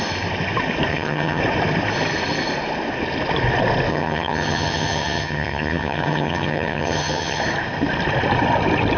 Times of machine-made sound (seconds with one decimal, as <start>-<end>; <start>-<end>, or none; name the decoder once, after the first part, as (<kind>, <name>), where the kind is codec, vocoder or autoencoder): 0.9-1.4 (vocoder, HiFi-GAN); 3.9-7.4